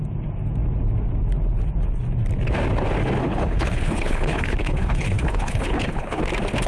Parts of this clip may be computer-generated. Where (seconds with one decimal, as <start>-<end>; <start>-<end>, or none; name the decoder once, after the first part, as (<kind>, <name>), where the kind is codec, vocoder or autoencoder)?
3.2-6.2 (codec, HILCodec)